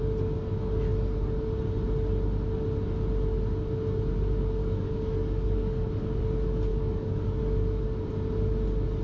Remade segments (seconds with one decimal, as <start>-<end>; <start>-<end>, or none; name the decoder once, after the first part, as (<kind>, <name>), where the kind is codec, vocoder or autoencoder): 4.6-5.9 (codec, DAC); 6.7-7.4